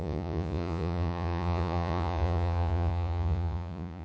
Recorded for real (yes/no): no